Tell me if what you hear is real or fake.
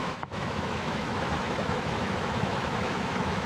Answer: fake